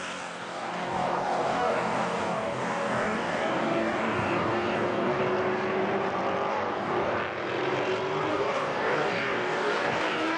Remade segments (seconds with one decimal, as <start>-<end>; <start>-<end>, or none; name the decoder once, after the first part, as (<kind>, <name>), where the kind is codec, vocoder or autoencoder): 0.0-5.2 (codec, DAC); 6.5-7.1; 8.3-10.4